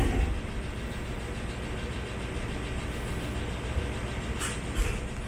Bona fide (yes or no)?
yes